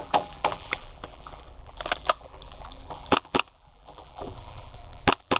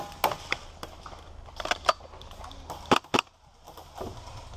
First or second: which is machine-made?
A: first